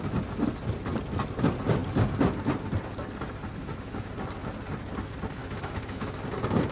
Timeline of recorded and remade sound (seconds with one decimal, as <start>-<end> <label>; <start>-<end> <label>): 0.0-3.6 recorded; 3.6-4.1 remade; 4.1-5.4 recorded; 5.4-6.2 remade; 6.2-6.7 recorded